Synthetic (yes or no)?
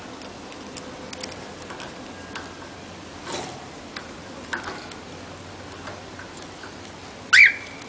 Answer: no